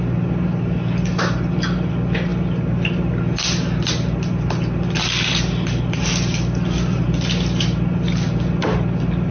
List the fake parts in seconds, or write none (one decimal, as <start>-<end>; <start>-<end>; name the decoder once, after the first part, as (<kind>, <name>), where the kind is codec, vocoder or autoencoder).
none